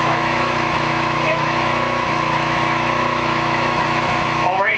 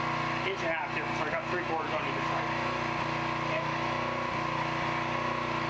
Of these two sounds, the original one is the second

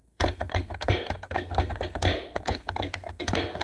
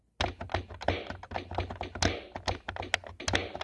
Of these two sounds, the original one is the second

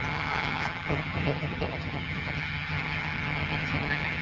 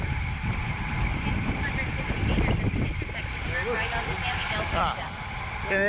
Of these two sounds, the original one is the second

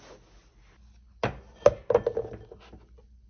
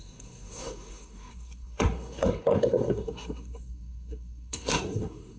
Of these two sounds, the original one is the first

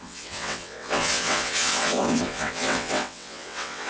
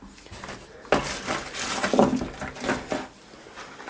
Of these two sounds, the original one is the second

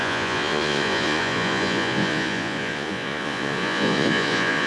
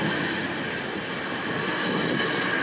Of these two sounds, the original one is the second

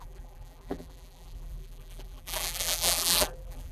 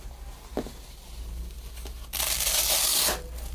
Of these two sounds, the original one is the second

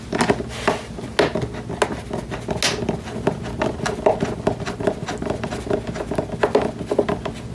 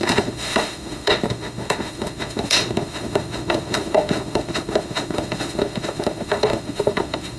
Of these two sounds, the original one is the first